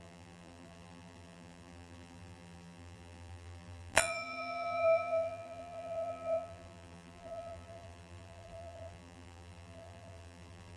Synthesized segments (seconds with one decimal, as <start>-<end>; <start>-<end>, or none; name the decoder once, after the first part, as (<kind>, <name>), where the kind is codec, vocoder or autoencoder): 0.0-10.8 (vocoder, BigVGAN v2)

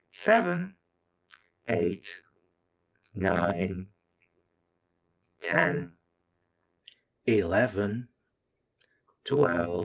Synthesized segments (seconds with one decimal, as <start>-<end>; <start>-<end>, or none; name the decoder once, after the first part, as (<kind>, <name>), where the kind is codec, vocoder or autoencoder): 0.0-6.8 (vocoder, BigVGAN v2); 9.3-9.8

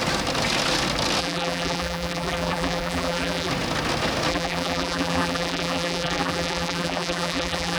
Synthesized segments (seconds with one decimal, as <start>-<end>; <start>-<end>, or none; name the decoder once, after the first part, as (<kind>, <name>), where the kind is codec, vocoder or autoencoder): 1.2-3.5 (vocoder, BigVGAN v2); 4.3-7.8

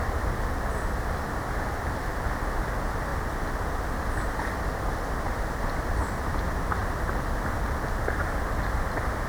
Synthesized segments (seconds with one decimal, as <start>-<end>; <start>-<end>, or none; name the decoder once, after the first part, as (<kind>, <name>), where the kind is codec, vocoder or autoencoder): 6.8-7.6 (vocoder, BigVGAN v2)

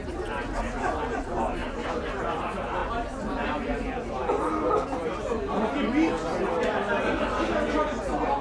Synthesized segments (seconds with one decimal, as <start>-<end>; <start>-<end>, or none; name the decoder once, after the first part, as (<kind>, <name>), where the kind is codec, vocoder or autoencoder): 2.8-5.6 (vocoder, BigVGAN v2)

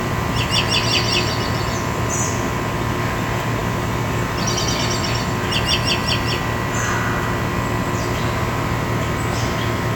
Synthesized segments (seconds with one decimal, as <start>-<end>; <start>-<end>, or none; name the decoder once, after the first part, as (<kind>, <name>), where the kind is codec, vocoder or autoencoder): 3.6-4.8 (vocoder, BigVGAN v2); 6.0-6.9

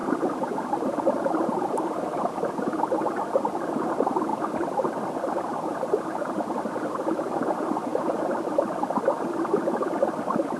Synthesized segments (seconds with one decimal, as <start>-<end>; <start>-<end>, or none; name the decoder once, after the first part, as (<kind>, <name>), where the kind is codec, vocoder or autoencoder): 0.0-1.3 (vocoder, BigVGAN v2)

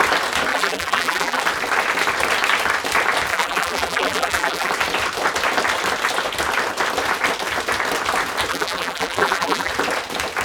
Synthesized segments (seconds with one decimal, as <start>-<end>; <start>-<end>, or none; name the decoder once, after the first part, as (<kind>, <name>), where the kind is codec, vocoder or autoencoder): 0.5-1.4 (vocoder, BigVGAN v2); 3.3-4.7; 8.5-9.7